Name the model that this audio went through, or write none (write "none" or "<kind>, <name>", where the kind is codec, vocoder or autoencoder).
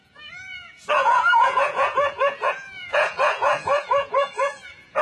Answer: vocoder, Vocos